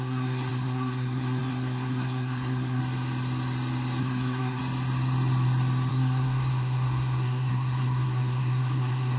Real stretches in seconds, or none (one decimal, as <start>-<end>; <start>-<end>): 2.8-4.0; 4.6-5.9